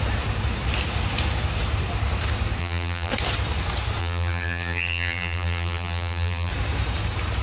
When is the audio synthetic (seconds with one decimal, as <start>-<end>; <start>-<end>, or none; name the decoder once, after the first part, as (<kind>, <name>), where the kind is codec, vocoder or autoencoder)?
2.6-3.1 (vocoder, BigVGAN v2); 4.0-6.5